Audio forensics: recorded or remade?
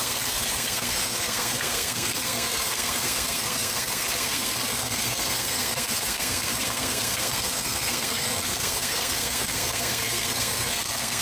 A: remade